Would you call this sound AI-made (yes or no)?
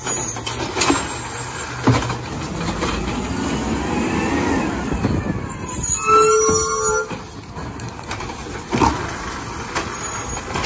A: no